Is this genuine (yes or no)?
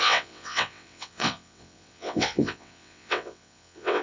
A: no